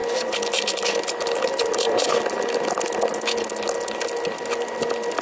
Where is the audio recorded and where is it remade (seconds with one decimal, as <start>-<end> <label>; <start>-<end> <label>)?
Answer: 0.0-5.2 recorded